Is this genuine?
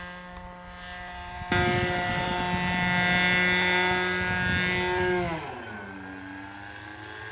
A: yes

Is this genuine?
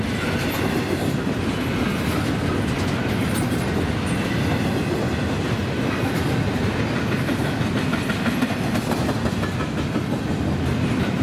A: yes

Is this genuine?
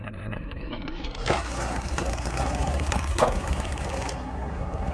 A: no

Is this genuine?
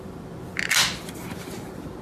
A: yes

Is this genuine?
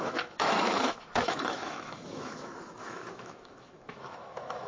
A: no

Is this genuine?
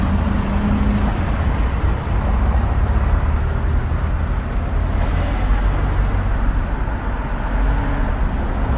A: yes